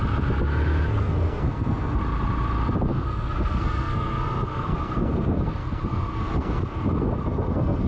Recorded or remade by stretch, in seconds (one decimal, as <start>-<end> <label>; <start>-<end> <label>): 0.0-1.0 recorded; 1.0-2.0 remade; 2.0-2.9 recorded; 2.9-7.9 remade